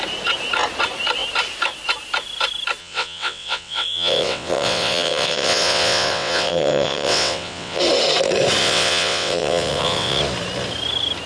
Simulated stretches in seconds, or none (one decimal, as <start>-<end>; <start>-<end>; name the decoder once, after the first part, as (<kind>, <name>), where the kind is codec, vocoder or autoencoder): 2.8-7.8 (vocoder, WaveNeXt); 8.6-10.2